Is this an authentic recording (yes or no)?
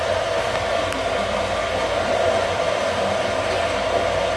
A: yes